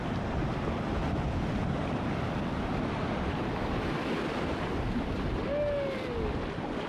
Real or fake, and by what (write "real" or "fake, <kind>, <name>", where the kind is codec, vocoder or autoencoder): real